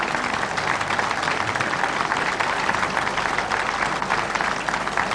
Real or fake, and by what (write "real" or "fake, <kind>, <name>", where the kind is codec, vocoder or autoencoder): real